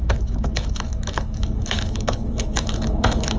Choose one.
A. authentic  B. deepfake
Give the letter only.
B